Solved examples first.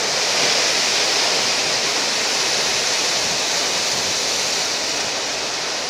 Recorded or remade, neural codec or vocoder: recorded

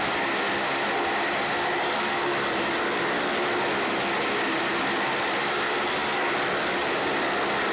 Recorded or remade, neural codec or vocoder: recorded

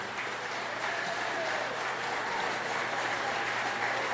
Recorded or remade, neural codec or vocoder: remade, vocoder, BigVGAN v2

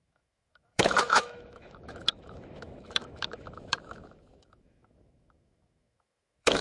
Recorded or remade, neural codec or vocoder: remade, autoencoder, DAC-VAE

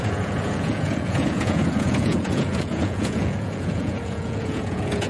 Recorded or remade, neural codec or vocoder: remade, vocoder, Vocos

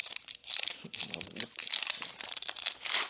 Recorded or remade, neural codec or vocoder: remade, vocoder, BigVGAN v2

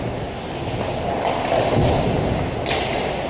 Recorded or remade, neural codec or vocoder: recorded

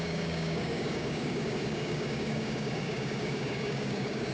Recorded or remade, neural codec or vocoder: remade, codec, DAC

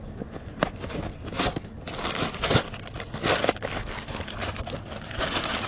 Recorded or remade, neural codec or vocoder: recorded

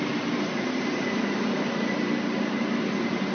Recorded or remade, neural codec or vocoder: recorded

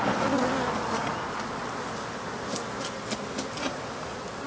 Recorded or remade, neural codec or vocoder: recorded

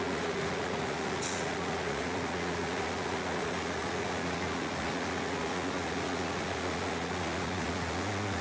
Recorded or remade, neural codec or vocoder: remade, vocoder, Vocos